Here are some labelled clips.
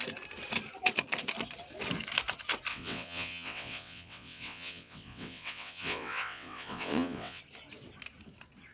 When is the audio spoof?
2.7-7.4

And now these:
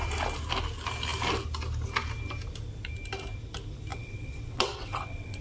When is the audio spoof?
3.9-5.4

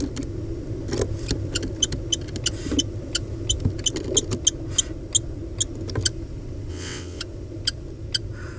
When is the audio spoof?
6.7-7.2

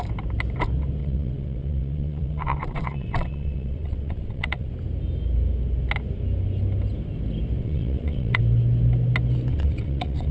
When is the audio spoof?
1.0-4.7; 7.6-8.4; 9.5-10.3

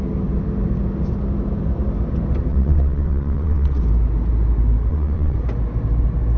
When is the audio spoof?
2.5-3.8; 4.9-5.4

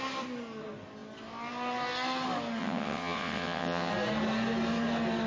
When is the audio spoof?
2.6-3.9

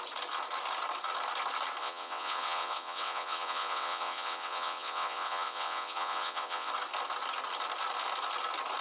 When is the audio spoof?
1.8-6.7